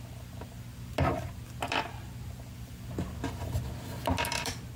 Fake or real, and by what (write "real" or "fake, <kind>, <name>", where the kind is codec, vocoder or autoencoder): fake, vocoder, BigVGAN v2